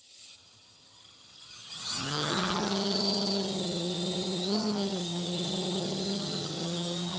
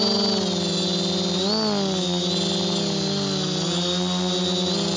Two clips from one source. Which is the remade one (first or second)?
first